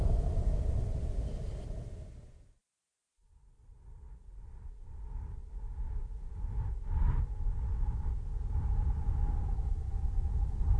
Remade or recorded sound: recorded